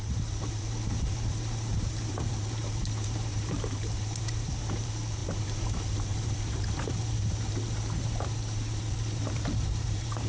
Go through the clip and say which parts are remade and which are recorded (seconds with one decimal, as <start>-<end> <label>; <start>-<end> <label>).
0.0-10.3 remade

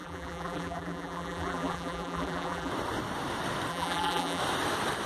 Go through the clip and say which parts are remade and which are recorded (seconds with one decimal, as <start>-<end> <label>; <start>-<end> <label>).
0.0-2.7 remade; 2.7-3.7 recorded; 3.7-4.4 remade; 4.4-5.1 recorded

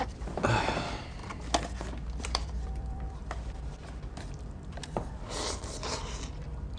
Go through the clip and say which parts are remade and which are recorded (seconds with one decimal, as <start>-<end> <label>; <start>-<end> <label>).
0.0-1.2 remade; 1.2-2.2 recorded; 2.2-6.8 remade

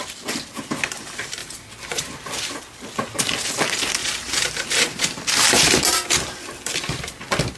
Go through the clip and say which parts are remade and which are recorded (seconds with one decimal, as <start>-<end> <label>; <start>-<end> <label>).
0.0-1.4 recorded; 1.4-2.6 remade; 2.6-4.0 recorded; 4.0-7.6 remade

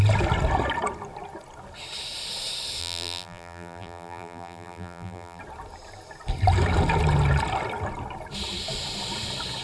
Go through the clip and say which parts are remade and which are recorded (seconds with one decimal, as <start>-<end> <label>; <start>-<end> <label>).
0.0-2.8 recorded; 2.8-5.4 remade; 5.4-9.6 recorded

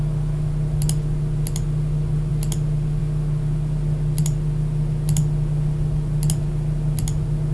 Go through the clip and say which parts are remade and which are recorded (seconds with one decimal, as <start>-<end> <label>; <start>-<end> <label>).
0.0-7.5 recorded

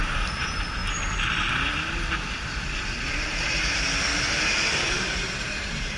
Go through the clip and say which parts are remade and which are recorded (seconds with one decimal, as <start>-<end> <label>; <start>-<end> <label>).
0.0-0.8 remade; 0.8-3.1 recorded; 3.1-4.1 remade; 4.1-4.9 recorded; 4.9-6.0 remade